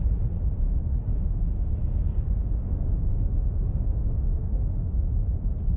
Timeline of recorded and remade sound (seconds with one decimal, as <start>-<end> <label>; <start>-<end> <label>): 0.0-1.1 recorded; 1.1-1.7 remade; 1.7-3.1 recorded; 3.1-4.9 remade; 4.9-5.8 recorded